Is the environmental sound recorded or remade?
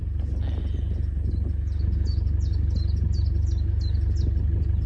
recorded